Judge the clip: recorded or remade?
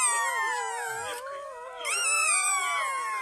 recorded